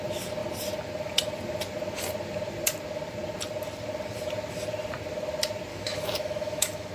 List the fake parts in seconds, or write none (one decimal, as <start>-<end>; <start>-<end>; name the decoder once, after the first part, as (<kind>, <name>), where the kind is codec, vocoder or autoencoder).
5.7-6.9 (autoencoder, DAC-VAE)